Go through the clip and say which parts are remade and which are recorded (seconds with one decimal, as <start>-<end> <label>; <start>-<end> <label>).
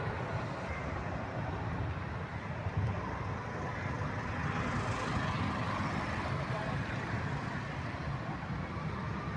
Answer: 0.0-9.4 recorded